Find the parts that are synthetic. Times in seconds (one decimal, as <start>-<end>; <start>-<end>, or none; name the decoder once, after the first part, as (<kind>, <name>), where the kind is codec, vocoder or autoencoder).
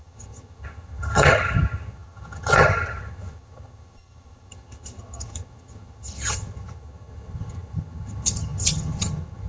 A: 0.0-9.5 (vocoder, HiFi-GAN)